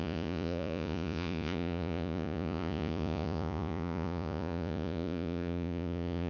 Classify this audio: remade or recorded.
remade